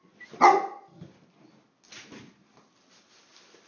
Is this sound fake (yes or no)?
no